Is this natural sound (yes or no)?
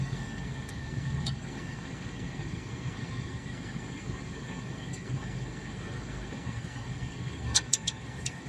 no